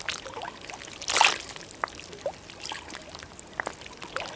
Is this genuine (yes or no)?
yes